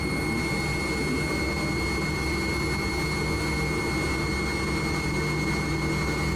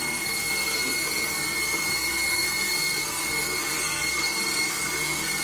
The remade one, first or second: second